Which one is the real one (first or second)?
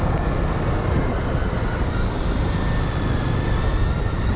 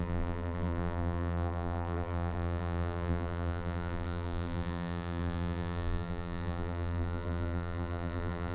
first